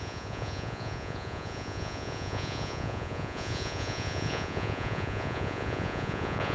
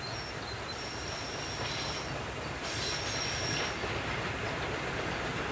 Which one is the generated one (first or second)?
first